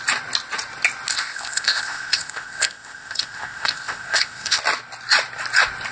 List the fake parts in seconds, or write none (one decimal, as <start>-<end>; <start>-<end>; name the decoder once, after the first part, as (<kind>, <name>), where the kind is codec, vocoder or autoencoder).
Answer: 1.1-4.6 (codec, ZipCodec)